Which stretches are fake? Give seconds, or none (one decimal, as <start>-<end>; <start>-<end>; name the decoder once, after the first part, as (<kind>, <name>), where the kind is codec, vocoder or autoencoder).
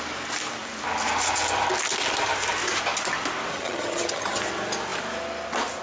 3.5-4.4 (vocoder, HiFi-GAN)